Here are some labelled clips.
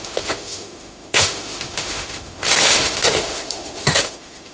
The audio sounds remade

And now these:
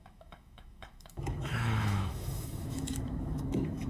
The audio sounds remade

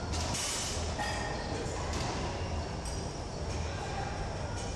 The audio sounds recorded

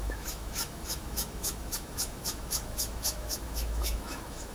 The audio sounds remade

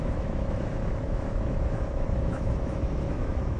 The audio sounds remade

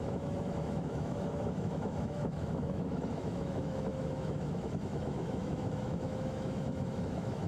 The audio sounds remade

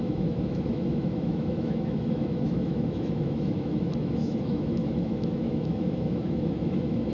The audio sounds remade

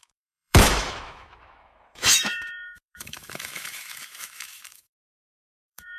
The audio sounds remade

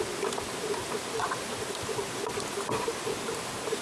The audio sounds recorded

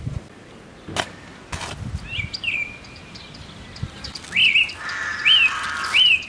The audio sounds recorded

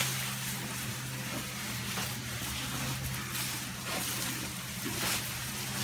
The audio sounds recorded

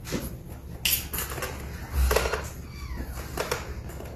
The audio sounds recorded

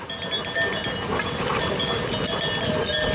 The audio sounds recorded